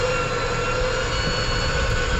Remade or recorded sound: recorded